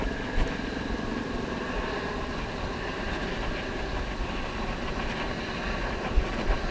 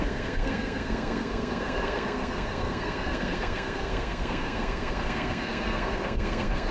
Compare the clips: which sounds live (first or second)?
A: first